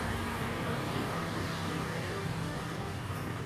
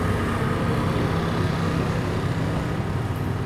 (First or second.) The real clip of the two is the second